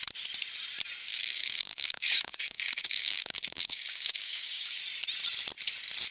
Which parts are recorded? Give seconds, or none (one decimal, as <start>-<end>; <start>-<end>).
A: 0.0-1.1; 4.8-6.1

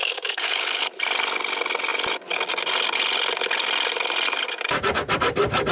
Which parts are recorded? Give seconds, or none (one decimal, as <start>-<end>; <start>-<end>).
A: 0.9-5.7

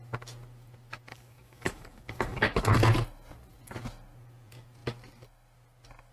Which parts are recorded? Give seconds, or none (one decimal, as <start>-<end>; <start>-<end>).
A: 0.0-1.1; 2.7-6.1